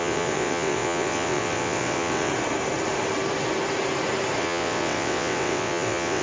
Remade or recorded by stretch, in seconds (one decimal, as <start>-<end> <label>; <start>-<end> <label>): 0.0-2.3 remade; 2.3-4.4 recorded; 4.4-6.2 remade